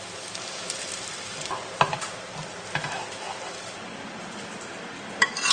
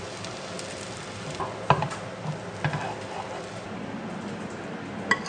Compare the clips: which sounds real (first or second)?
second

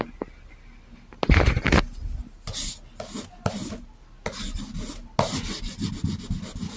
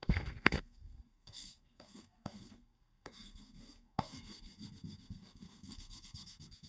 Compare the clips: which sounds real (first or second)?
first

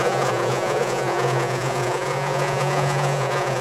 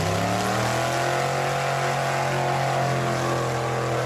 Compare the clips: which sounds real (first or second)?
second